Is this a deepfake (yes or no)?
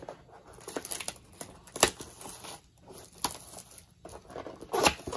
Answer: no